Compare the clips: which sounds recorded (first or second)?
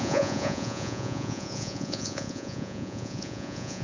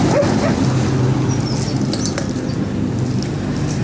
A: second